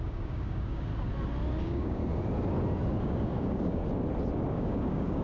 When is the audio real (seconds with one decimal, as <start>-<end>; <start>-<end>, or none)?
0.9-1.6; 2.0-3.0; 3.8-4.5